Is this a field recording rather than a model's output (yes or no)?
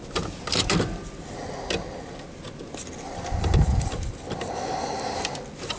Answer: yes